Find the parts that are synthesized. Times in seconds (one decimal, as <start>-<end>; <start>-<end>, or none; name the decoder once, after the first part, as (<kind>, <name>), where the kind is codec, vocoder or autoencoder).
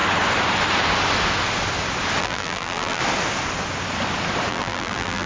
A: 2.2-3.0 (vocoder, BigVGAN v2); 4.5-5.3